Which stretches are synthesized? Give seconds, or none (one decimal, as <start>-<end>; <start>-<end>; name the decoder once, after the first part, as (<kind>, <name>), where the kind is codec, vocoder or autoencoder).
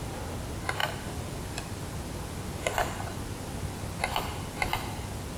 none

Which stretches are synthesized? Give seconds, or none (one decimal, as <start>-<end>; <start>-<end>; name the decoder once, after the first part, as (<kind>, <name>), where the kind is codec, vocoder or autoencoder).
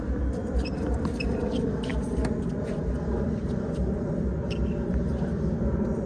none